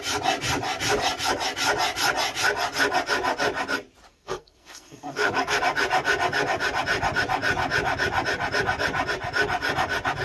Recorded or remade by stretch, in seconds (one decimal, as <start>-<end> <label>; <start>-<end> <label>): 0.0-4.1 recorded; 4.1-5.6 remade; 5.6-10.2 recorded